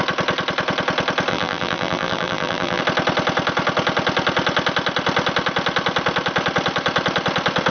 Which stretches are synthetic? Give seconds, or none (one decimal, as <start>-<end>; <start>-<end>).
1.3-2.8